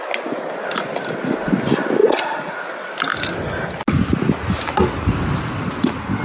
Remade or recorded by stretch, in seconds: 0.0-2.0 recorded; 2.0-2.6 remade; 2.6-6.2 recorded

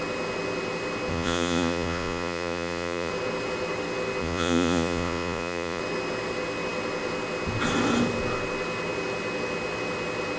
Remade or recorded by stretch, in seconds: 0.0-1.1 recorded; 1.1-3.1 remade; 3.1-4.2 recorded; 4.2-5.8 remade; 5.8-10.4 recorded